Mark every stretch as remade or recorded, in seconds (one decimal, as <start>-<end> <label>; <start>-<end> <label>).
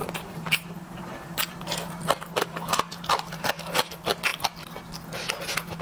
0.0-3.5 remade; 3.5-5.8 recorded